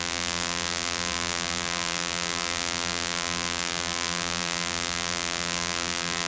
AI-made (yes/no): yes